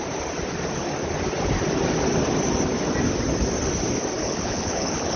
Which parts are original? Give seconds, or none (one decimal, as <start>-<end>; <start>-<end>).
0.0-4.2